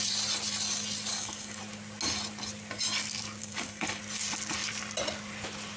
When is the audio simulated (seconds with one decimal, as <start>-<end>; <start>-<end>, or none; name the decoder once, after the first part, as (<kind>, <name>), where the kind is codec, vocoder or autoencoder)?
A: 1.1-1.6 (codec, DAC); 3.4-4.0